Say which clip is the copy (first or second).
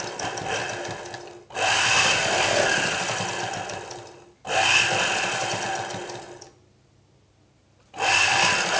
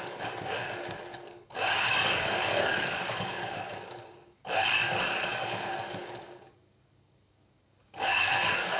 second